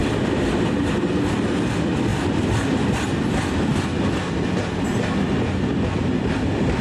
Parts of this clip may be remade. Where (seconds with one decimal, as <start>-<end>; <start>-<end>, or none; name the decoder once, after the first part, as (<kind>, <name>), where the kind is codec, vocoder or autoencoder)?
0.0-0.7 (vocoder, BigVGAN v2); 2.1-4.3